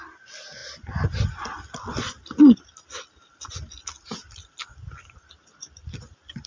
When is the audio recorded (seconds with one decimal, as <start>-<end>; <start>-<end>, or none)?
0.0-6.5